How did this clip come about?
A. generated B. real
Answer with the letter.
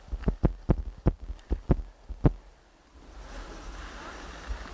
B